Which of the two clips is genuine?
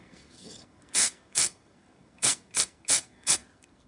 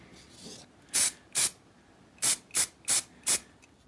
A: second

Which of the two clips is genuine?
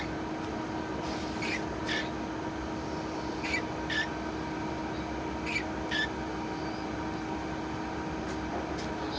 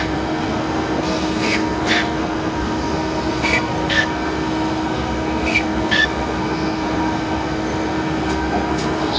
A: first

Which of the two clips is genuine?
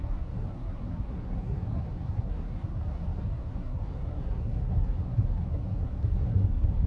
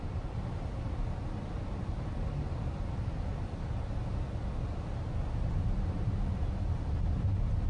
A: second